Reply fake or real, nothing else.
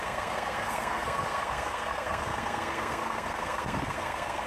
fake